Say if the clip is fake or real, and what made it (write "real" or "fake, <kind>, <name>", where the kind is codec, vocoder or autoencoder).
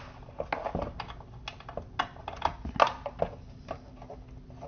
real